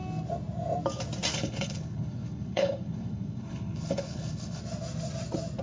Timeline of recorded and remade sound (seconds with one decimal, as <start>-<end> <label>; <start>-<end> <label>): 0.0-1.3 recorded; 1.3-4.6 remade; 4.6-5.6 recorded